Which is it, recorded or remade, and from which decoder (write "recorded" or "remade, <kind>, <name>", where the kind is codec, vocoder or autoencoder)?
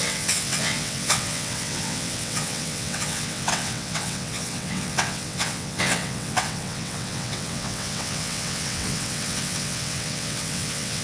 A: remade, vocoder, WaveNeXt